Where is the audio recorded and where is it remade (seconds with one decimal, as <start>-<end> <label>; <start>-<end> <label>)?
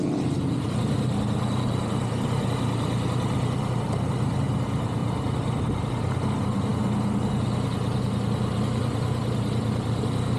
0.0-5.0 recorded; 5.0-5.8 remade; 5.8-10.4 recorded